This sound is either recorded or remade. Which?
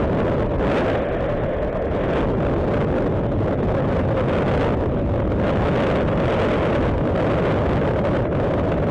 recorded